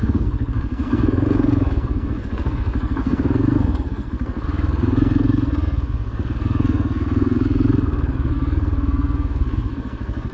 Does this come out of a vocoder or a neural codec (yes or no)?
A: yes